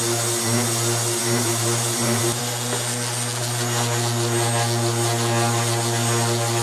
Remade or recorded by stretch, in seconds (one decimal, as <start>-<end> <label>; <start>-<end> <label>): 0.0-1.2 recorded; 1.2-2.4 remade; 2.4-6.6 recorded